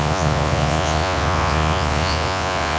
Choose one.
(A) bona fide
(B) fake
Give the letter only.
B